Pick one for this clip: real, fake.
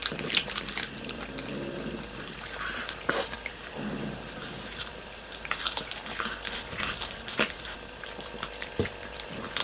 fake